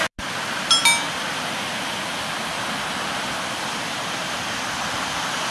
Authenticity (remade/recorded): recorded